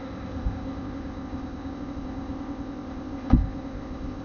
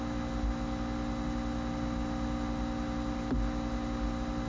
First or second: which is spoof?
first